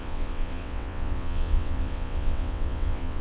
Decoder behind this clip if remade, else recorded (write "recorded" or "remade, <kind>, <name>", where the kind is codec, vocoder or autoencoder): remade, vocoder, WaveNeXt